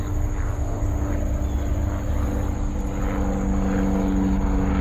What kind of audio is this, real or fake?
real